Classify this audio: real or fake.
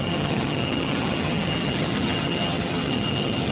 fake